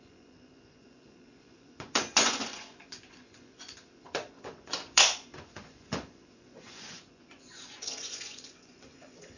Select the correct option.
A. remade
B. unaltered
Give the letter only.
A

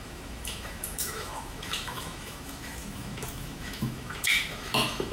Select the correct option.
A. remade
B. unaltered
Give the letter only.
A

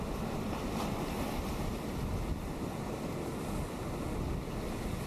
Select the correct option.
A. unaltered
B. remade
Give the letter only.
A